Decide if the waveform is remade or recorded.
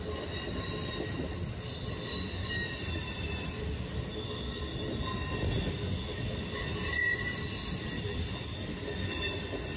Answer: recorded